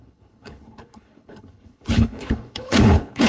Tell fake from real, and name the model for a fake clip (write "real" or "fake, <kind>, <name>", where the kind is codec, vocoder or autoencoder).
fake, codec, HILCodec